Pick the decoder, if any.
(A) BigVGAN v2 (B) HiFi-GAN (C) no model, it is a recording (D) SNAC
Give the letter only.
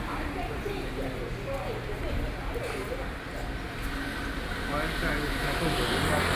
C